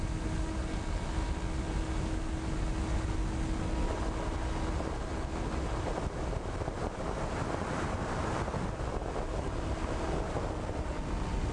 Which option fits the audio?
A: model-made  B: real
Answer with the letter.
B